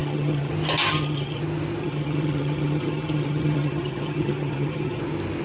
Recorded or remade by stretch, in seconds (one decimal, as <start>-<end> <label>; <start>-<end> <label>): 0.0-0.5 remade; 0.5-0.9 recorded; 0.9-1.4 remade; 1.4-1.8 recorded; 1.8-5.0 remade; 5.0-5.4 recorded